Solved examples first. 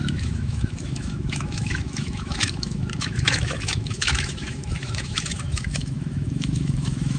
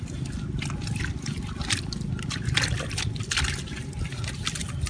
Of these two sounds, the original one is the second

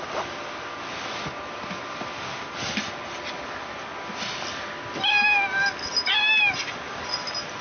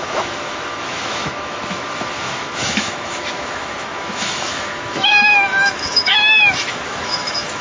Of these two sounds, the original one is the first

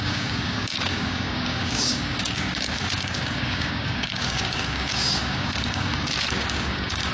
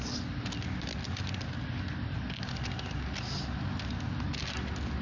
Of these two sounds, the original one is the second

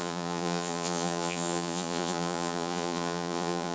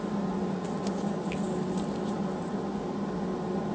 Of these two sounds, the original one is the second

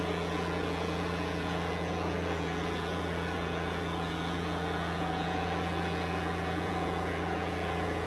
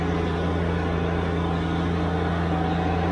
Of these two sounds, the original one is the second